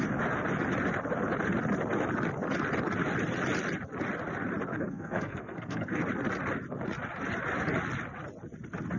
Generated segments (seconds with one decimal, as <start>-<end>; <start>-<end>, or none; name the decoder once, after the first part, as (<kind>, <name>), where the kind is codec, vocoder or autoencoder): 4.7-6.0 (codec, SNAC)